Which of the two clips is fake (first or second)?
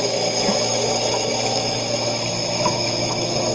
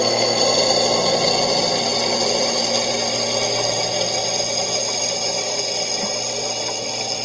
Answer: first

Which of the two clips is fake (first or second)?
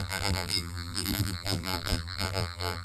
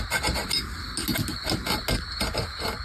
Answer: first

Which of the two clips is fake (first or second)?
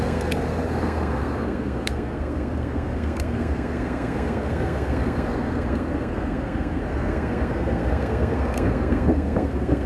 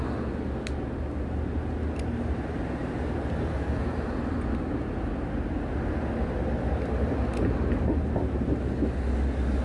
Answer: first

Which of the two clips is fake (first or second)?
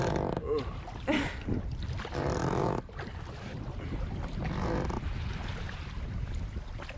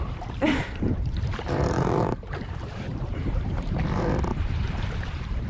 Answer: second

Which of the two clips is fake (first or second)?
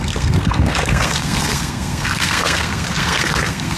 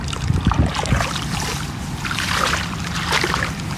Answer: first